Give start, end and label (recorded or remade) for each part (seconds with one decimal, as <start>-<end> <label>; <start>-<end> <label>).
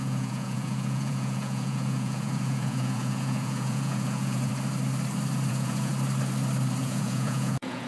0.0-4.5 remade; 4.5-5.5 recorded; 5.5-5.9 remade; 5.9-6.8 recorded; 6.8-7.9 remade